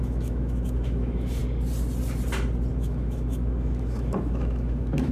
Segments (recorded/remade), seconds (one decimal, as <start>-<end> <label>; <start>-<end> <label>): 0.0-1.4 remade; 1.4-2.7 recorded; 2.7-5.1 remade